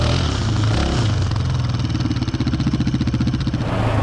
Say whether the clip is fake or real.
real